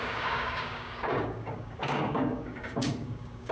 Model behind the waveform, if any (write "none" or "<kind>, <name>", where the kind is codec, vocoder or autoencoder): codec, DAC